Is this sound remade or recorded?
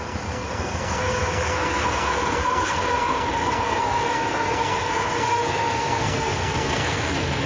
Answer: remade